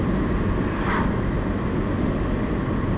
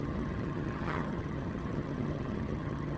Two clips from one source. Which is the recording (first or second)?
first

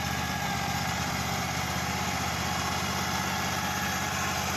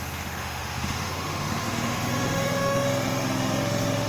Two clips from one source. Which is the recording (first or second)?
first